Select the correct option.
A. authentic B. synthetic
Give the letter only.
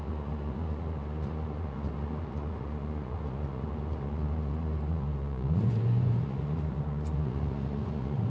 B